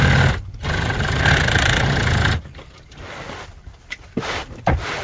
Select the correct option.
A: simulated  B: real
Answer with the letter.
B